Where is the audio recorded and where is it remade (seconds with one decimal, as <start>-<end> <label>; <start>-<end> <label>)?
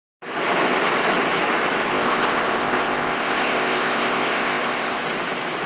0.0-1.9 recorded; 1.9-5.0 remade; 5.0-5.7 recorded